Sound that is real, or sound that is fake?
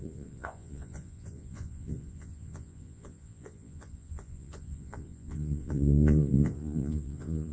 fake